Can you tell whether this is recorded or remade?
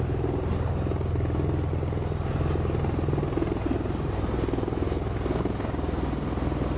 recorded